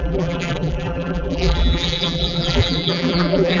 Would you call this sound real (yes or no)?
no